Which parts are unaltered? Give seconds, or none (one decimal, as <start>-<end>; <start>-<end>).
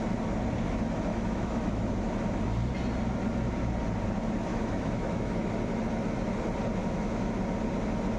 0.0-1.1; 1.9-4.5; 5.5-6.8; 7.4-8.2